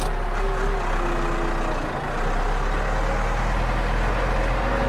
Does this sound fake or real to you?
real